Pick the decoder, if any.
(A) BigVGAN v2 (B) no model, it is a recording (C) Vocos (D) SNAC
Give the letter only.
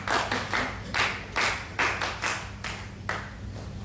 B